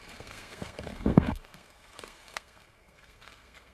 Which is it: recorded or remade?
remade